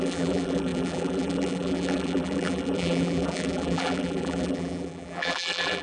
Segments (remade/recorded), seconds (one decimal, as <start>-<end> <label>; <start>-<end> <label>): 0.0-5.8 remade